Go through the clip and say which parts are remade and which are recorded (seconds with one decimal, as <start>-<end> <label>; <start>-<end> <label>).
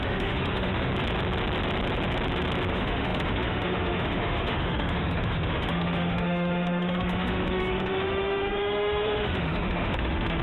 0.0-0.9 remade; 0.9-2.7 recorded; 2.7-10.4 remade